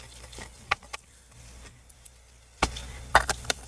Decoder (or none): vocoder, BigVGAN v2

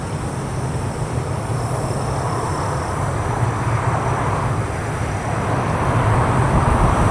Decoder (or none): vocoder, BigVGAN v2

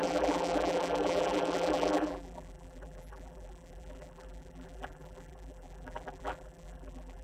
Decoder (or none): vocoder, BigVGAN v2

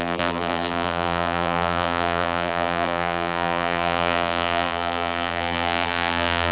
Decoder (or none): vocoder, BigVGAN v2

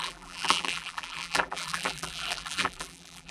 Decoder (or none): vocoder, BigVGAN v2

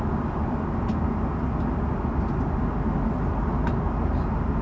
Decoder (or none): none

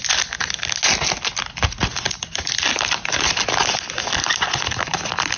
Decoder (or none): none